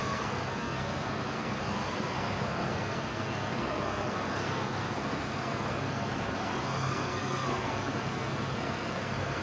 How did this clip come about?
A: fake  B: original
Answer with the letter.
A